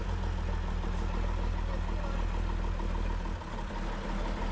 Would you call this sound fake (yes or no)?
no